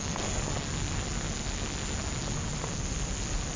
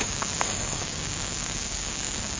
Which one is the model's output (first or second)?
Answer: second